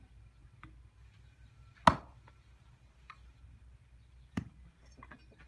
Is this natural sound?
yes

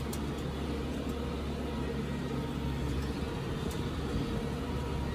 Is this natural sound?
yes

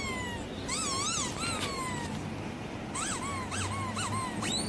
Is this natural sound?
yes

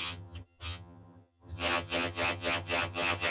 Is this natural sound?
no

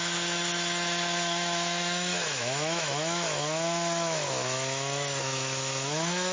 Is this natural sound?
no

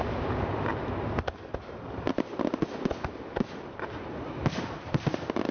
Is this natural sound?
yes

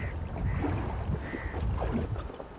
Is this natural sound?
yes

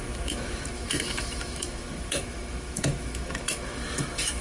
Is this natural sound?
no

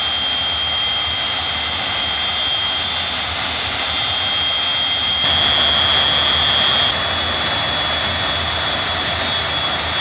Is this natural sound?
yes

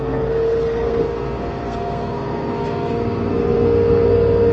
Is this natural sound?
no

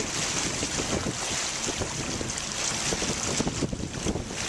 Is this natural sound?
yes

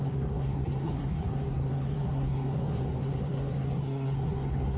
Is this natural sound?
no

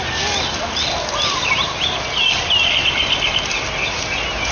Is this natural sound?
yes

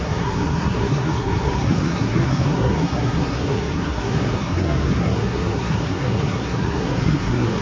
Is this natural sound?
no